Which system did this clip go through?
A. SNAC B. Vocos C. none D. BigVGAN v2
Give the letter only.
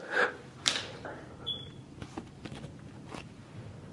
D